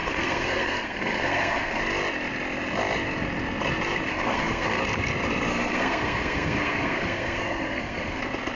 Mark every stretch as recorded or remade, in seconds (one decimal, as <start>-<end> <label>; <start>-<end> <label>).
0.0-1.8 remade; 1.8-4.1 recorded; 4.1-4.8 remade; 4.8-5.5 recorded; 5.5-8.2 remade; 8.2-8.6 recorded